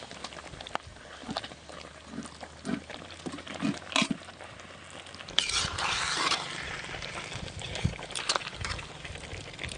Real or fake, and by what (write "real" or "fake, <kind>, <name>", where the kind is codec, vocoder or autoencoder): real